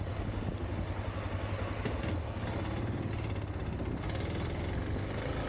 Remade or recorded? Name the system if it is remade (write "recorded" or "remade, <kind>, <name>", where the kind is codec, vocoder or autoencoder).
recorded